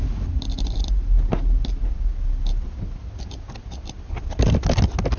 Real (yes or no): yes